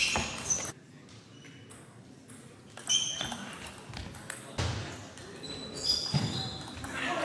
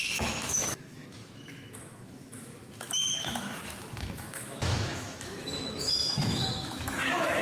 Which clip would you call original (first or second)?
first